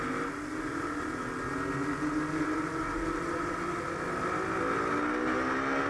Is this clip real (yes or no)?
yes